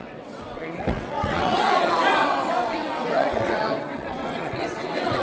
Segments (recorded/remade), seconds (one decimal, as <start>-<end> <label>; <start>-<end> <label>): 0.0-5.2 remade